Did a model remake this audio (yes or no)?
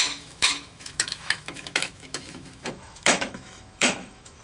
yes